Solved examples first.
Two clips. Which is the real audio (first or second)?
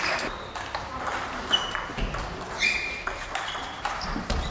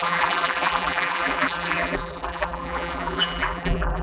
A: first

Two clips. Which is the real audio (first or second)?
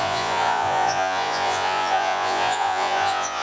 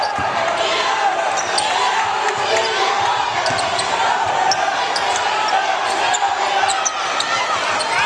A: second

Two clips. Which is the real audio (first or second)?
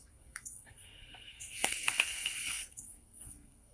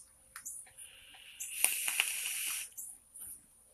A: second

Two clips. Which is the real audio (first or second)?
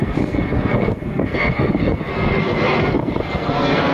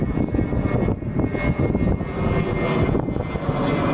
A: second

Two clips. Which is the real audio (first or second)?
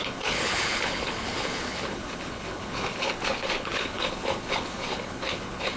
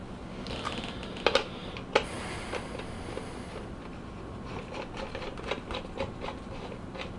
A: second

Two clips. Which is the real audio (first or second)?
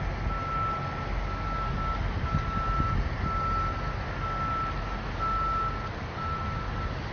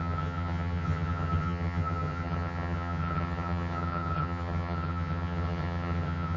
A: first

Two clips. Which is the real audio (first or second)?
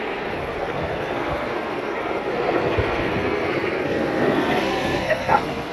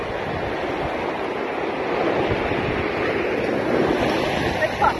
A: second